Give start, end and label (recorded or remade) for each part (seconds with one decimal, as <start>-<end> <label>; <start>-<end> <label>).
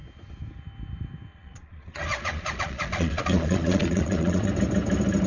0.0-1.3 recorded; 1.3-4.5 remade; 4.5-5.3 recorded